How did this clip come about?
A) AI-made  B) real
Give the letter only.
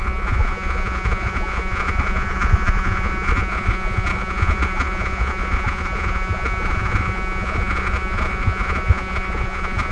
A